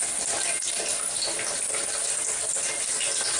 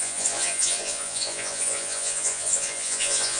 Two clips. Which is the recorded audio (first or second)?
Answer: first